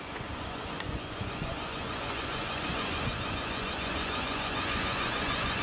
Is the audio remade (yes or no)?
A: yes